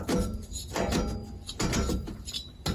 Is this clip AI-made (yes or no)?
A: no